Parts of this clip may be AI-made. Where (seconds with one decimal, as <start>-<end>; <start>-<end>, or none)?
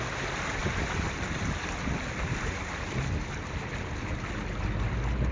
none